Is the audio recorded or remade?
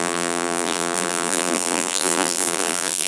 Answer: remade